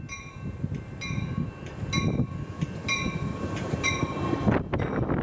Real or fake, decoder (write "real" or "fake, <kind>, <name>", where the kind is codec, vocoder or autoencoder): real